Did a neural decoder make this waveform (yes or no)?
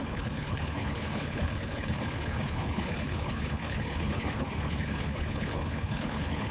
yes